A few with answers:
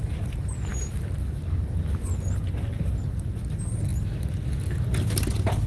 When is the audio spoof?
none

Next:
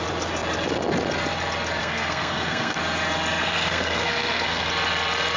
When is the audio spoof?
1.8-2.8 (codec, SNAC); 3.4-4.7

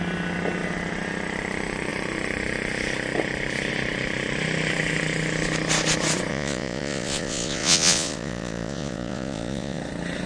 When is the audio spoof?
6.3-9.8 (vocoder, Vocos)

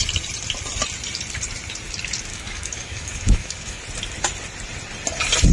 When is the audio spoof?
2.3-3.8 (codec, DAC)

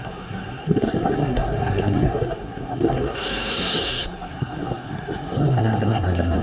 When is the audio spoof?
0.0-6.4 (codec, SNAC)

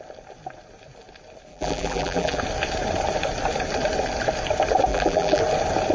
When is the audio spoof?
1.5-2.4 (vocoder, BigVGAN v2); 4.9-5.4